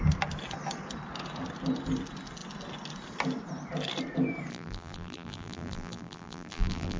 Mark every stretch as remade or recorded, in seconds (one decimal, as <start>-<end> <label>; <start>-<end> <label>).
0.0-4.5 recorded; 4.5-7.0 remade